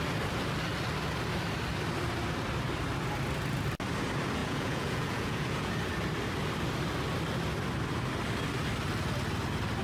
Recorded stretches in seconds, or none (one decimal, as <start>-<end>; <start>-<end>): 0.0-4.4; 5.7-9.8